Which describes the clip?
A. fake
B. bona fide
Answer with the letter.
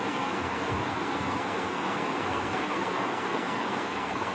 A